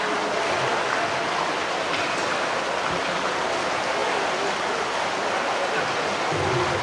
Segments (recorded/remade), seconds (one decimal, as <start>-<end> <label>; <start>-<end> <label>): 0.0-6.8 recorded